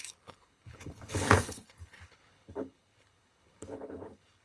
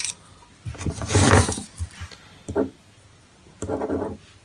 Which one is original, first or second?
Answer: second